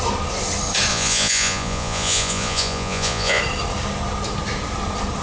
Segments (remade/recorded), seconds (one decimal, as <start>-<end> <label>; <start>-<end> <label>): 0.0-0.9 recorded; 0.9-3.4 remade; 3.4-5.2 recorded